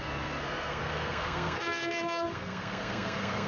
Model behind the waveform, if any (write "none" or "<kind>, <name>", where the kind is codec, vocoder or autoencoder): codec, SNAC